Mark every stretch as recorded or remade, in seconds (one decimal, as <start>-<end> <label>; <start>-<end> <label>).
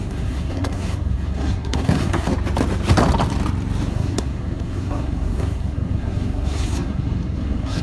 0.0-2.3 remade; 2.3-3.9 recorded; 3.9-7.8 remade